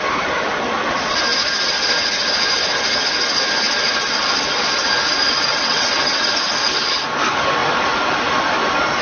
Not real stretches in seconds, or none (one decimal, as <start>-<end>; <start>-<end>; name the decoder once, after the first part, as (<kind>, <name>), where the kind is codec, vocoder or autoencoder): 5.5-6.3 (vocoder, WaveNeXt)